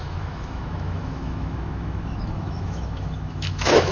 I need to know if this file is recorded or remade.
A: remade